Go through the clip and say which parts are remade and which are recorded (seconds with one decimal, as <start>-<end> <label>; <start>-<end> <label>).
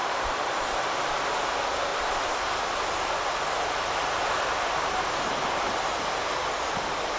0.0-1.2 remade; 1.2-1.9 recorded; 1.9-2.4 remade; 2.4-7.2 recorded